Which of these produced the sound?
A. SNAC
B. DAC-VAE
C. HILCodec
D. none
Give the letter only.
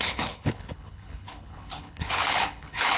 C